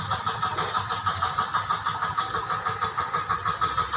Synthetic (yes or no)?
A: no